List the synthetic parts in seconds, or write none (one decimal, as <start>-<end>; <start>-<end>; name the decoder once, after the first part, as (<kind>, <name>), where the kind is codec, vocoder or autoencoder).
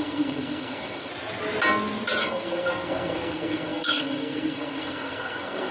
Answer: 0.0-1.1 (codec, SNAC); 2.2-5.7